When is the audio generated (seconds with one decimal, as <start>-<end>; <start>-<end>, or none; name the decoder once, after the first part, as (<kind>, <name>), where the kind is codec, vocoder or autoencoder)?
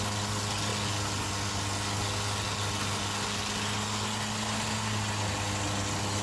none